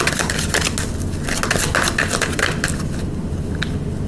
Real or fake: real